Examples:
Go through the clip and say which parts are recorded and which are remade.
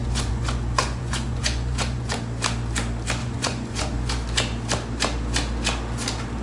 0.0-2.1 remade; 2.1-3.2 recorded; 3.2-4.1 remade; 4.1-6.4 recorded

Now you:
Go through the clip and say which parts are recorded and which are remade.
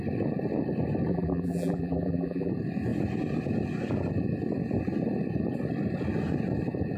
0.0-1.1 recorded; 1.1-2.5 remade; 2.5-7.0 recorded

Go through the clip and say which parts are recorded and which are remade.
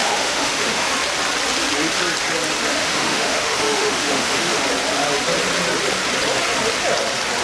0.0-0.9 remade; 0.9-2.7 recorded; 2.7-4.6 remade; 4.6-7.4 recorded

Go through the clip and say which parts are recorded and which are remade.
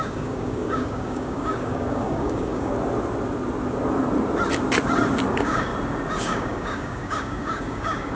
0.0-2.7 remade; 2.7-5.3 recorded; 5.3-5.7 remade; 5.7-6.2 recorded; 6.2-8.2 remade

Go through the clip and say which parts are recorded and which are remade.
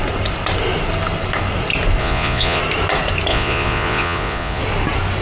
0.0-2.0 recorded; 2.0-2.6 remade; 2.6-3.3 recorded; 3.3-4.6 remade; 4.6-5.2 recorded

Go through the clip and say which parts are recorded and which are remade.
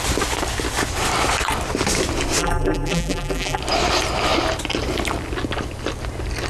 0.0-2.4 recorded; 2.4-3.6 remade; 3.6-6.5 recorded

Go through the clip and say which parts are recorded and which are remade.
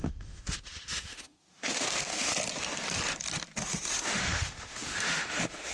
0.0-2.3 remade; 2.3-4.0 recorded; 4.0-5.7 remade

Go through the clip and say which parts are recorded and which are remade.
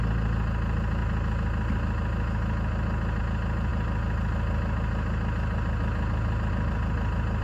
0.0-7.4 recorded